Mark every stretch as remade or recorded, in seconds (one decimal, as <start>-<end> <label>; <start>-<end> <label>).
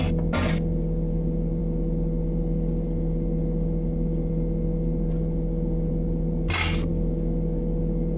0.0-8.2 recorded